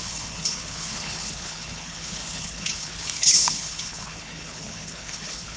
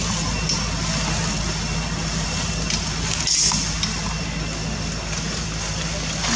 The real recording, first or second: second